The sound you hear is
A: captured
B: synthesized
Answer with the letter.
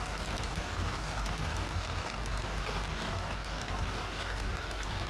B